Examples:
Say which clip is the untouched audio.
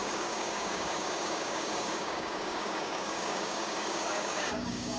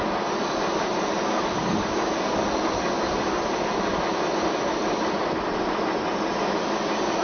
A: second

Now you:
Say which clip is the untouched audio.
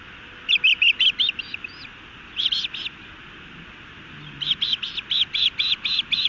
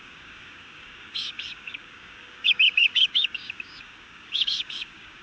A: first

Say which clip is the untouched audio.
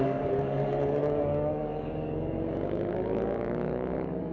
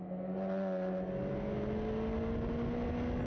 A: second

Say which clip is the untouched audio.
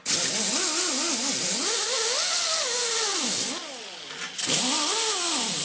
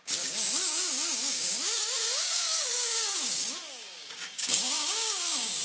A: first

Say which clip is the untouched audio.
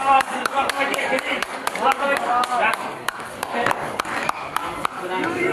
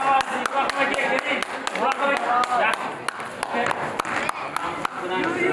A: second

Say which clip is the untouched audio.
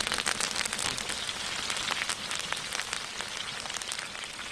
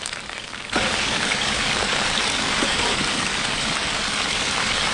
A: first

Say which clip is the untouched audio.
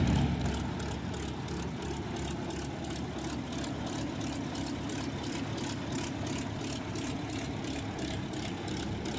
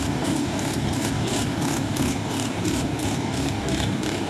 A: first